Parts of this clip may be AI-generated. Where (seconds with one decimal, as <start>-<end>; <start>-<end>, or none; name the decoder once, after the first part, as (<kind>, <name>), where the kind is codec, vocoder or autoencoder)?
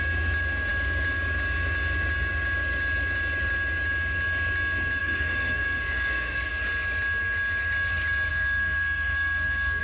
5.0-6.5 (codec, SNAC); 8.3-9.8